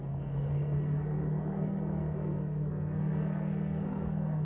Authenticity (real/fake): fake